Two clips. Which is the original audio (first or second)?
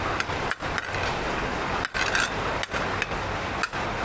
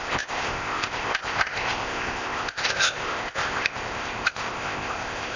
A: first